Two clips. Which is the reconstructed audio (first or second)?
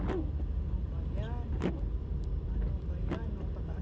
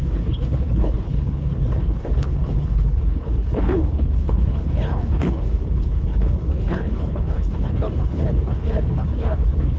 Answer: second